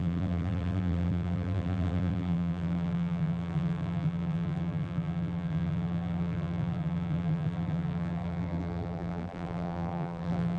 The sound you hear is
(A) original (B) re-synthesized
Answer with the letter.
B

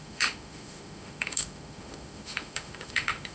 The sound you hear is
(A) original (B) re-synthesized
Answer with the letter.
B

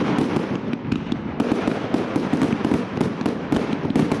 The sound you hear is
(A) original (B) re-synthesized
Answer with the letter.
A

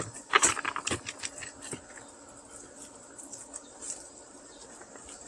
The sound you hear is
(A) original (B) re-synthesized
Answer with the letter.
A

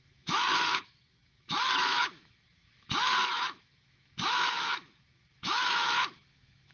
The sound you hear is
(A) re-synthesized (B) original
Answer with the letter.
A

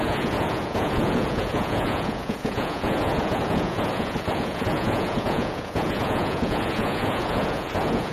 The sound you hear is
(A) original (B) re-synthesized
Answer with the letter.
B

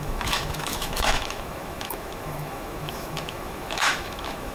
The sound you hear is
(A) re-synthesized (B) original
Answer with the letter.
A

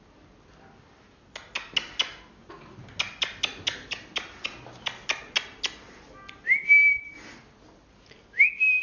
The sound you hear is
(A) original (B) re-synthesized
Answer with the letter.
A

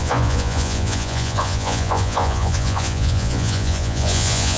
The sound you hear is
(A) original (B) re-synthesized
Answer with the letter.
B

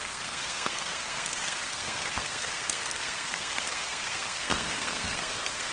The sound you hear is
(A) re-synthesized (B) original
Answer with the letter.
A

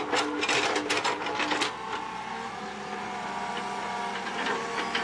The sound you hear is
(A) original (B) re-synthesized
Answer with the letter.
A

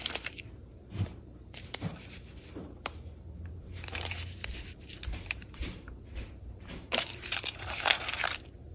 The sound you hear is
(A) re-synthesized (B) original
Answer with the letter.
A